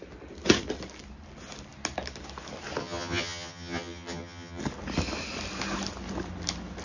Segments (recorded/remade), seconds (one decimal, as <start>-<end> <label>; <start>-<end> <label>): 0.0-2.8 recorded; 2.8-4.6 remade; 4.6-6.8 recorded